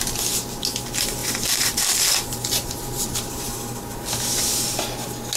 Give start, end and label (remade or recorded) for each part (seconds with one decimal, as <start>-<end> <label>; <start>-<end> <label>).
0.0-1.2 recorded; 1.2-4.4 remade; 4.4-5.4 recorded